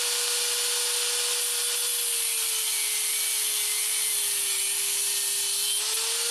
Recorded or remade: recorded